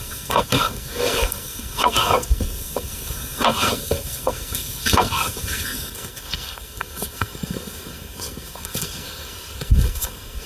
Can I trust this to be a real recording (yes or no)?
no